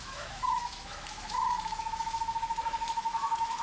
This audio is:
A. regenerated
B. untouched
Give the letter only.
A